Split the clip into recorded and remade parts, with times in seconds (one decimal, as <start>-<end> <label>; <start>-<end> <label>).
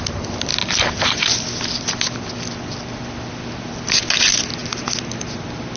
0.0-5.8 recorded